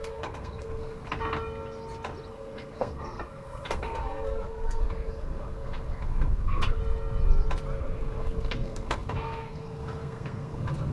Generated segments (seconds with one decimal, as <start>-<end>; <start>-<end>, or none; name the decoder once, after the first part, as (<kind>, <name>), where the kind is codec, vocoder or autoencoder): 0.0-1.0 (codec, SNAC); 2.3-6.8; 7.8-10.9